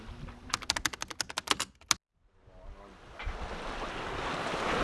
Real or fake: real